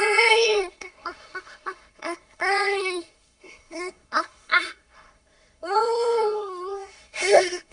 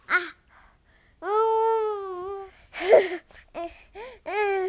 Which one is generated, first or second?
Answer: first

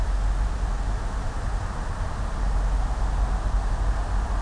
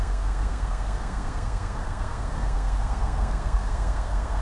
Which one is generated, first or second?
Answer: second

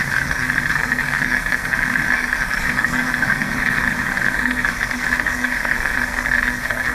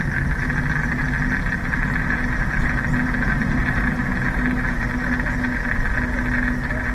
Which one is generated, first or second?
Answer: first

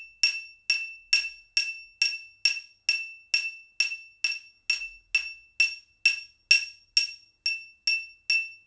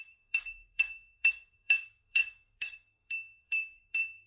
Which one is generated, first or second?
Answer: second